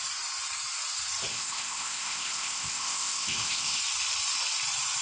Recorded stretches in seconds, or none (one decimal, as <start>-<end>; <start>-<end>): 0.0-1.3; 3.8-5.0